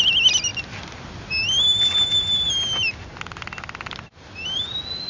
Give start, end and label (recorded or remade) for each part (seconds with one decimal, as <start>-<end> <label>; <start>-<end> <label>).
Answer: 0.0-5.1 recorded